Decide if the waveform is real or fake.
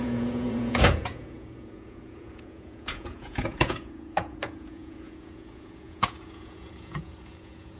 fake